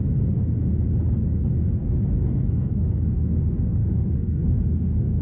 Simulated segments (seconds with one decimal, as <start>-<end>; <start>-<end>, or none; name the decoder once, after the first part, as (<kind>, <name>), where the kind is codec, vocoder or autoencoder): 1.8-5.2 (codec, SNAC)